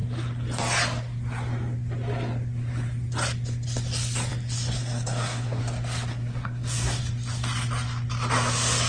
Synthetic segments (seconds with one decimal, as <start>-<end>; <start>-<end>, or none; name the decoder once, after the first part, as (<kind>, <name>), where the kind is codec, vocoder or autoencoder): 4.8-5.6 (codec, SNAC); 6.1-7.0